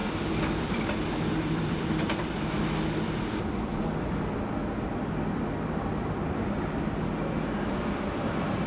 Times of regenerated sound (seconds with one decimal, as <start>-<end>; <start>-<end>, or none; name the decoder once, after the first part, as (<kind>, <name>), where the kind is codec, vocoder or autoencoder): 0.0-3.7 (vocoder, BigVGAN v2); 7.8-8.7